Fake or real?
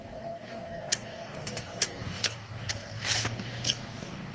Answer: fake